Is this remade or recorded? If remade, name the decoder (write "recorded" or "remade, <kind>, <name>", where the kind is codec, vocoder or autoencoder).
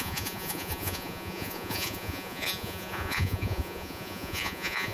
remade, vocoder, Vocos